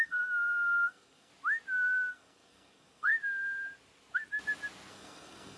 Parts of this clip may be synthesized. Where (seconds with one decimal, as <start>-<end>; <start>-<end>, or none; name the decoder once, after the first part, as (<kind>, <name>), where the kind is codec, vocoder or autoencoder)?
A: 0.0-1.3 (codec, SNAC); 2.1-3.1; 4.9-5.6